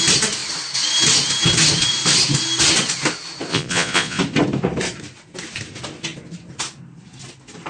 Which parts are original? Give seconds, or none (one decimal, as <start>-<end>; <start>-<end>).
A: 0.0-3.5; 4.2-7.7